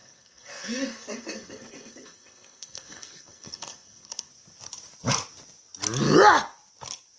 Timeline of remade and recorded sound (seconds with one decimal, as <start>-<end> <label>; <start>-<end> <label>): 0.0-4.3 remade; 4.3-7.2 recorded